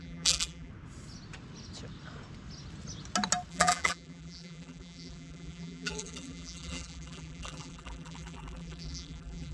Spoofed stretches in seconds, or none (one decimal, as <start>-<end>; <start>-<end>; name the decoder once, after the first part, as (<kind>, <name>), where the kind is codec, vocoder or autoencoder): 0.0-0.7 (vocoder, BigVGAN v2); 3.5-9.5